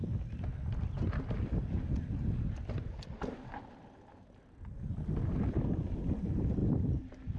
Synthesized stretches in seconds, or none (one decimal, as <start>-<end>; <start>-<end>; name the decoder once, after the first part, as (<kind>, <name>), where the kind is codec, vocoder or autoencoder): none

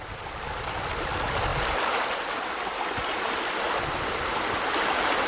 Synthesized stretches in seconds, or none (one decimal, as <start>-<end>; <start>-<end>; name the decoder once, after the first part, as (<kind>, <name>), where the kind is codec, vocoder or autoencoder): none

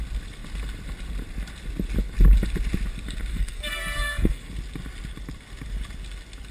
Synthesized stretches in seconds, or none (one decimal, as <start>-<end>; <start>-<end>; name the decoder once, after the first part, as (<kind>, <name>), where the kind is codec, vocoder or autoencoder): 3.3-4.5 (codec, SNAC)

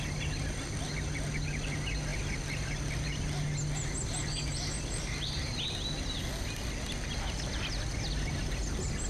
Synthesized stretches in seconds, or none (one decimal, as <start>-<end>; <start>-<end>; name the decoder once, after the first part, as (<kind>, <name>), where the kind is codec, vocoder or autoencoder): none

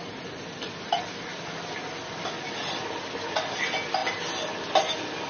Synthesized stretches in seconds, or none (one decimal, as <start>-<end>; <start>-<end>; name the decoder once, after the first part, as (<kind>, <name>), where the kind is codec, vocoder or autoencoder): none

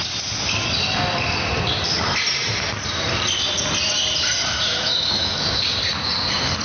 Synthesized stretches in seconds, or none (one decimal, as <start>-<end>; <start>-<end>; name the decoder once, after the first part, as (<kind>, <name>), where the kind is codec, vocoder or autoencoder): 4.4-5.6 (autoencoder, DAC-VAE)

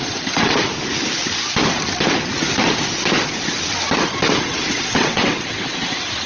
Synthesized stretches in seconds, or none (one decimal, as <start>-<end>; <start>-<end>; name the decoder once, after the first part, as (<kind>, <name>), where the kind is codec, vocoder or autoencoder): 0.0-0.6 (vocoder, WaveNeXt); 4.4-6.3